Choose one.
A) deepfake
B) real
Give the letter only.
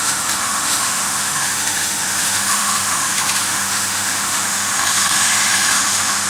A